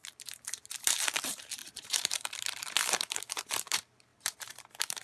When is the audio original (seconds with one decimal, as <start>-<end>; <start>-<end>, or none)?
none